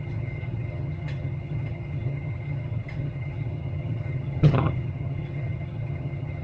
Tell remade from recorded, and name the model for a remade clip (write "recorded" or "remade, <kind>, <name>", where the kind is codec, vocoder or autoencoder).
remade, vocoder, HiFi-GAN